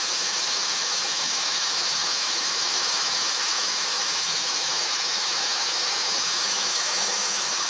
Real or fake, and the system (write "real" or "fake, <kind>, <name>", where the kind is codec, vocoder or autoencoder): fake, autoencoder, DAC-VAE